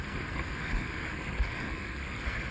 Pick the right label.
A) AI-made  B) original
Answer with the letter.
A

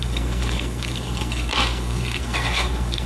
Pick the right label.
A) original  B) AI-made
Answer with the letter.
B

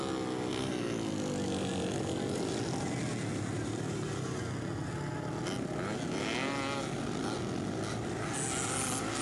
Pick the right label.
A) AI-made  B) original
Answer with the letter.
B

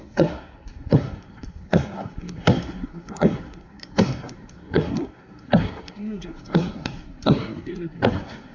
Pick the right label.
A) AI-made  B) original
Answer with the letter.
A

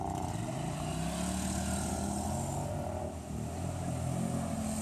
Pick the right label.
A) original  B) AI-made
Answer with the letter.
A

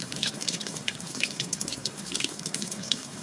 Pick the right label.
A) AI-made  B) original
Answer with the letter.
A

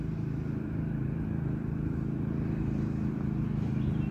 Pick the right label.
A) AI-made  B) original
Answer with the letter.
B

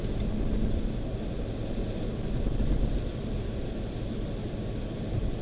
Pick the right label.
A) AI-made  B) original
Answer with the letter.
B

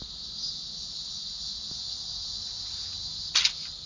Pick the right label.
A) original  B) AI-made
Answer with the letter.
A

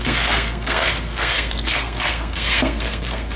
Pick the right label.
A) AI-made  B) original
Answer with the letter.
A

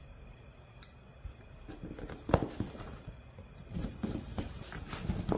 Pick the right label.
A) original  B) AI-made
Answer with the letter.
A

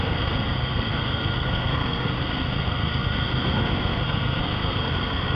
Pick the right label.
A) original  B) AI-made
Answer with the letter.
B